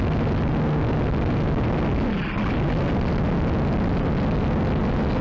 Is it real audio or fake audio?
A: real